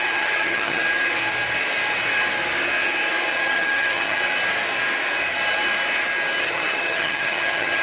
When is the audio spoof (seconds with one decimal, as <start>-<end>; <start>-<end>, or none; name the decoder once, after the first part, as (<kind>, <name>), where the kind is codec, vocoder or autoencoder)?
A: 0.0-0.8 (vocoder, HiFi-GAN); 3.3-4.2; 6.4-7.8